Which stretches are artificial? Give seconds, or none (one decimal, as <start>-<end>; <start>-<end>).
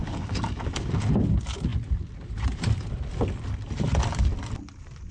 0.0-0.9